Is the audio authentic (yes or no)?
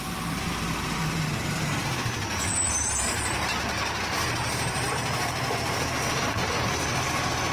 no